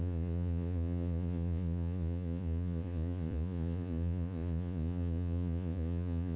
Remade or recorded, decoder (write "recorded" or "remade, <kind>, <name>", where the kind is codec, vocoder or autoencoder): remade, vocoder, Vocos